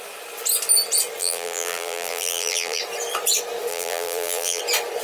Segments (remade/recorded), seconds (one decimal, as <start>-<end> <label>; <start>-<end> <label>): 0.0-1.2 recorded; 1.2-2.8 remade; 2.8-3.7 recorded; 3.7-4.6 remade; 4.6-5.0 recorded